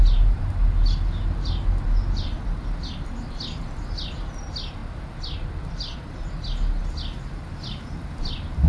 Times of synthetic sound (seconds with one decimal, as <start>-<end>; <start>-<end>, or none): none